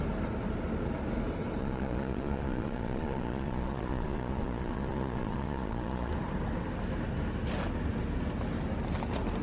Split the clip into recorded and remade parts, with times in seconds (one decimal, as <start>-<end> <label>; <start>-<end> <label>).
0.0-1.6 recorded; 1.6-6.1 remade; 6.1-9.4 recorded

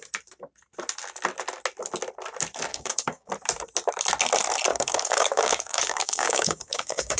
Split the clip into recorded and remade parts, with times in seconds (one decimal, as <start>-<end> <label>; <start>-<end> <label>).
0.0-2.7 recorded; 2.7-3.3 remade; 3.3-4.7 recorded; 4.7-7.2 remade

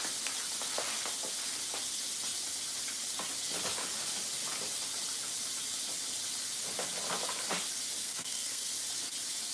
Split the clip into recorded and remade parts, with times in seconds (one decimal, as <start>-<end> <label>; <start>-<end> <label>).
0.0-8.0 recorded; 8.0-8.7 remade; 8.7-9.5 recorded

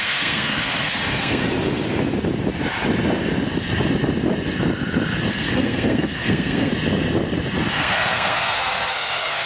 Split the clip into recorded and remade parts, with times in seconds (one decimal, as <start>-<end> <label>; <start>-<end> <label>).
0.0-1.4 remade; 1.4-5.3 recorded; 5.3-6.7 remade; 6.7-7.7 recorded; 7.7-9.5 remade

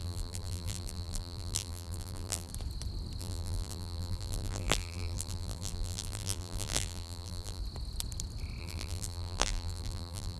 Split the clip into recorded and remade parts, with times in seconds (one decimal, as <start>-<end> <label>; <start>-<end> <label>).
0.0-2.5 remade; 2.5-3.2 recorded; 3.2-7.6 remade; 7.6-8.6 recorded; 8.6-10.4 remade

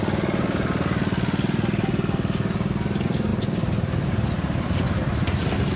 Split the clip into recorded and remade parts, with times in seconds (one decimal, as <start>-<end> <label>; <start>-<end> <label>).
0.0-5.8 recorded

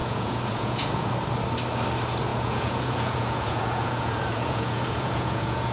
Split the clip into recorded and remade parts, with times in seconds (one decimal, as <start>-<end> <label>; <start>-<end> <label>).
0.0-1.1 remade; 1.1-2.3 recorded; 2.3-5.7 remade

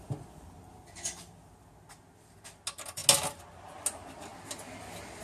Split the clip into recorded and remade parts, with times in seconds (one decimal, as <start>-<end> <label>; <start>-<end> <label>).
0.0-1.7 remade; 1.7-5.2 recorded